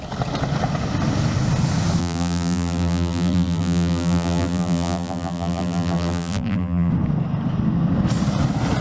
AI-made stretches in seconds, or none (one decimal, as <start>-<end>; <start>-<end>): 2.0-6.9